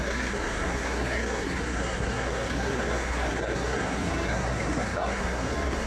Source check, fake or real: fake